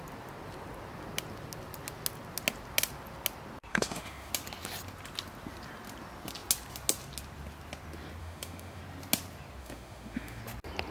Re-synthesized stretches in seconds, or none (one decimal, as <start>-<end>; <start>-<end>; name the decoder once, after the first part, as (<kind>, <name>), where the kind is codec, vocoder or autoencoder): 3.7-4.3 (autoencoder, DAC-VAE); 8.2-8.8; 9.6-10.4